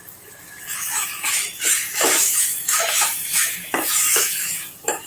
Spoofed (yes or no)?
yes